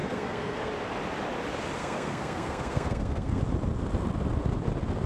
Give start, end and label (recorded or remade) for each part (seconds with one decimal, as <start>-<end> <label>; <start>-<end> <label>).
0.0-0.7 remade; 0.7-1.8 recorded; 1.8-3.4 remade; 3.4-5.1 recorded